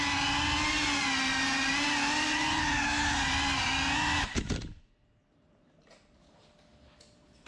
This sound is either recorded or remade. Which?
recorded